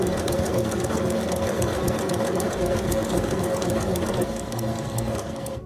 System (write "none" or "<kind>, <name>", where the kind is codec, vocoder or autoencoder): codec, SNAC